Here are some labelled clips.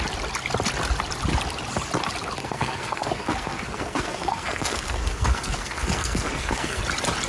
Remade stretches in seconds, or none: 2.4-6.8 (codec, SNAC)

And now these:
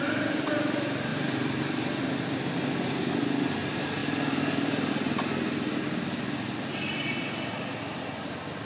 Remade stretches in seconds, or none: 1.1-2.0 (vocoder, BigVGAN v2); 4.0-4.9

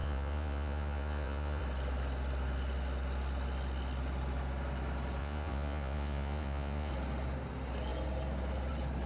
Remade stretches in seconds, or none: 0.0-1.6 (vocoder, Vocos); 5.2-6.9

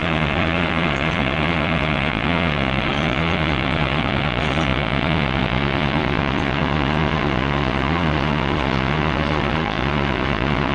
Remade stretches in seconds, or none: 0.0-10.7 (vocoder, Vocos)

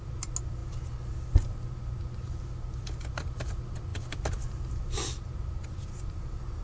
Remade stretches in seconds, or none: none

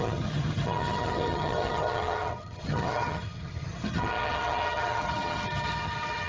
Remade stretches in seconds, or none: 0.0-6.3 (vocoder, HiFi-GAN)